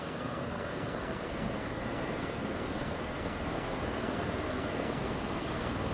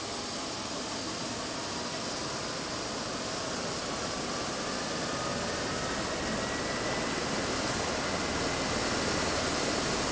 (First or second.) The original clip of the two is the second